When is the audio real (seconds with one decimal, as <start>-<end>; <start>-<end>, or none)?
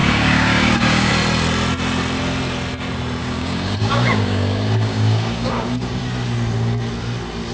1.1-3.2; 6.0-7.5